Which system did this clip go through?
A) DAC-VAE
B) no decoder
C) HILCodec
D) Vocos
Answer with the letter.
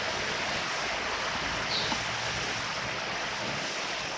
B